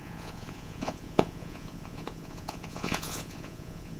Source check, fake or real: fake